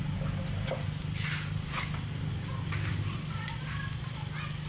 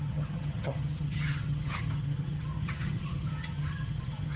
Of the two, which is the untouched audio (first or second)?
first